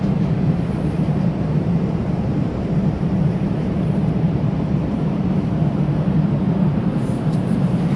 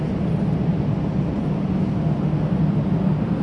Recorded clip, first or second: second